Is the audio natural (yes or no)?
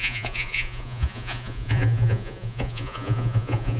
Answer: no